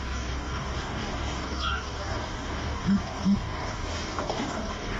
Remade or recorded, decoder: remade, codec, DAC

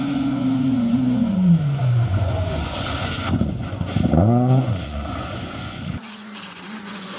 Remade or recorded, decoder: remade, vocoder, Vocos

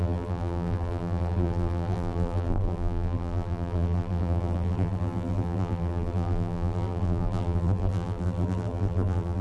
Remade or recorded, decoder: remade, vocoder, BigVGAN v2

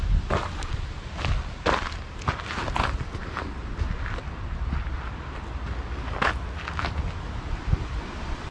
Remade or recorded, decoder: recorded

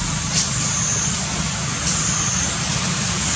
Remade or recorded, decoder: recorded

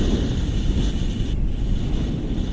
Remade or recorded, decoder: recorded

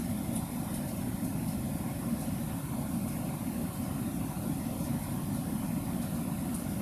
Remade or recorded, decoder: recorded